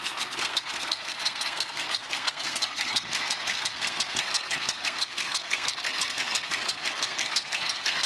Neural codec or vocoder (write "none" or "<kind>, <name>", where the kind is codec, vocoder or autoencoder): codec, SNAC